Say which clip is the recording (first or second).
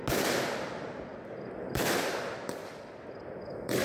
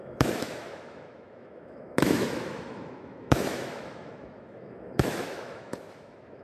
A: first